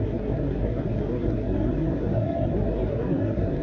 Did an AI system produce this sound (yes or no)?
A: yes